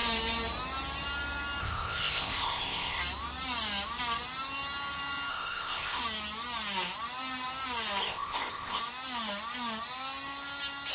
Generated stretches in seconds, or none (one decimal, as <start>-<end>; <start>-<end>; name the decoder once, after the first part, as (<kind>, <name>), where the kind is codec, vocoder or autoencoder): 1.6-3.0 (codec, ZipCodec); 5.3-6.0; 8.0-8.8